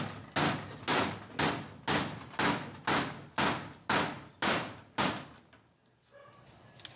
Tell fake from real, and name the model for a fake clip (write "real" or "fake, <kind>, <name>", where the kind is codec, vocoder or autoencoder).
real